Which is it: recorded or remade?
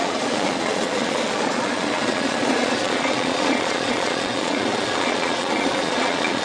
remade